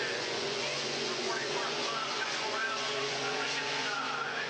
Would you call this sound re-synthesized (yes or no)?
yes